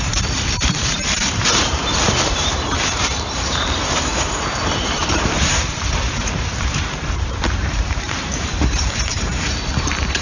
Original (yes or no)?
no